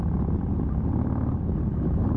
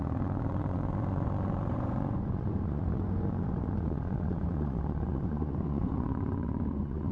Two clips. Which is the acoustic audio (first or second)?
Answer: first